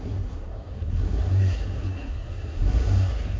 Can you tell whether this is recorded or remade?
remade